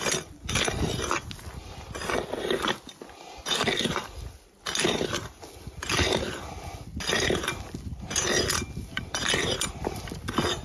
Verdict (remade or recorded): recorded